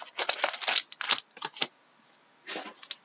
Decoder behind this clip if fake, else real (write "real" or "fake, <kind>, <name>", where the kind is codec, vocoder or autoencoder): real